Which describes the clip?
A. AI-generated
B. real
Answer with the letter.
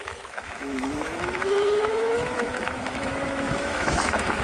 A